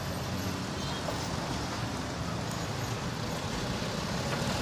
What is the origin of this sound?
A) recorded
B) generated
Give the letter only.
A